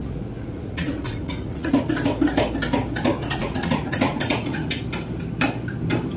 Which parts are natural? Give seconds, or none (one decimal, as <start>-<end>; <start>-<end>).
1.7-3.2; 4.8-6.2

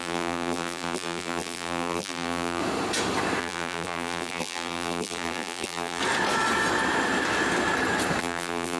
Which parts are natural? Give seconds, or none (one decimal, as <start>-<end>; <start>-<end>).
2.6-3.4; 6.0-8.2